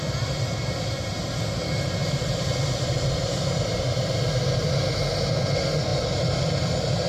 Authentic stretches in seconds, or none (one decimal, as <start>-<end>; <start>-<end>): 0.0-2.0; 4.7-5.9